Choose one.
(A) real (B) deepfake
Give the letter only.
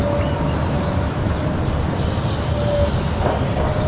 A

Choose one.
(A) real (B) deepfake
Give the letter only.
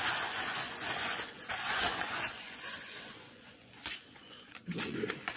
B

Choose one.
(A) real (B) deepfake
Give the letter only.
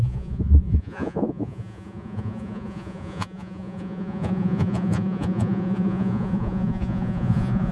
B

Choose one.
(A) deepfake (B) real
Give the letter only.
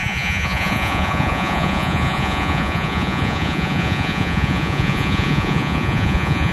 A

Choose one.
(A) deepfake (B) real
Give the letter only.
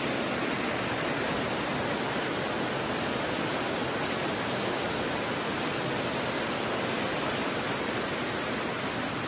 B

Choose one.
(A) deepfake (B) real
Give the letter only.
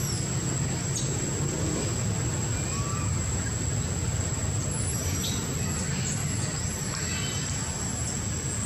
B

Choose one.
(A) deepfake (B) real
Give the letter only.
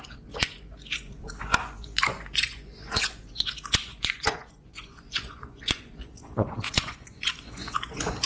A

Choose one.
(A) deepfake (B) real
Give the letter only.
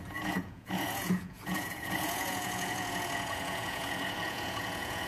A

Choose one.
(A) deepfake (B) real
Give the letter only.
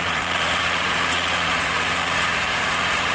A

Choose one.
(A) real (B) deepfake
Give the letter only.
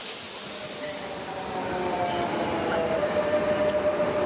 A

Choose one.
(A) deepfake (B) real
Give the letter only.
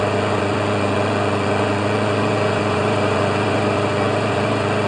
A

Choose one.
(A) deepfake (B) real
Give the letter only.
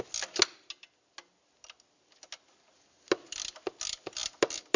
B